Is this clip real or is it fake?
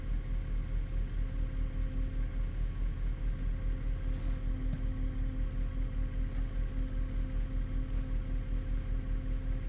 real